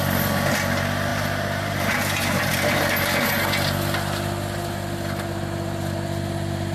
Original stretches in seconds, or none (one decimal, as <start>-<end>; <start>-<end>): 0.0-1.1; 2.5-6.7